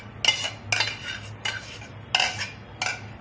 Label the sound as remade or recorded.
recorded